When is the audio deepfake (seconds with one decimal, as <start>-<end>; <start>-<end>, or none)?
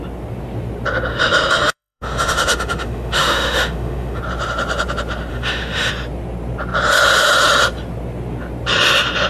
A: 1.1-4.2; 5.3-5.9